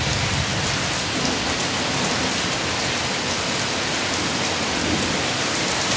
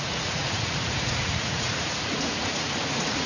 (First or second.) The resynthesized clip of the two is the second